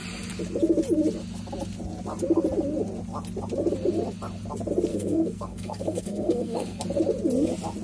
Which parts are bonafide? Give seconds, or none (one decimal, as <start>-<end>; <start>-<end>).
0.0-4.9; 6.8-7.8